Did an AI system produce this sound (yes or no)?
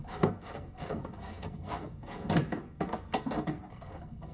yes